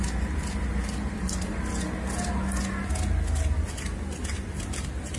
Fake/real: real